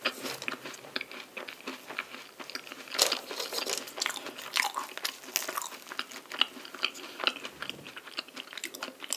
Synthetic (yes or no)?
no